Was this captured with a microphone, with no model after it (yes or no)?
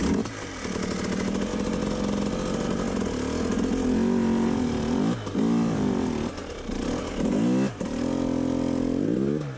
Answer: yes